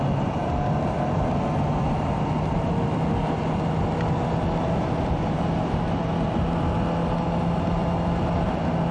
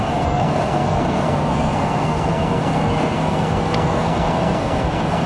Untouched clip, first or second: first